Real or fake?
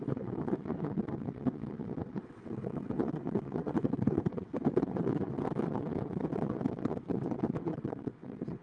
fake